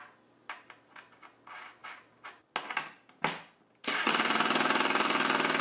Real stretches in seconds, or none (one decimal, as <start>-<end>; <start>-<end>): 0.0-5.6